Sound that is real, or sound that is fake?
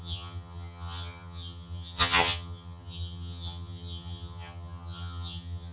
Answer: fake